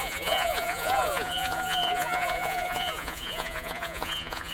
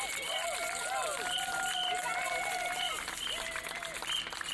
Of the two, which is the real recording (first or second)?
second